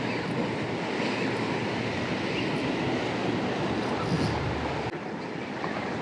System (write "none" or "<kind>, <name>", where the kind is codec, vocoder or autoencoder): none